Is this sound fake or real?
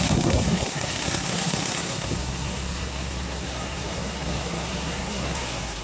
fake